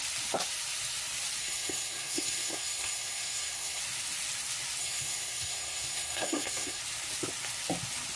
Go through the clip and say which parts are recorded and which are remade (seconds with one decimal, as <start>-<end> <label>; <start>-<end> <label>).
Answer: 0.0-1.4 recorded; 1.4-3.8 remade; 3.8-4.8 recorded; 4.8-6.8 remade; 6.8-8.2 recorded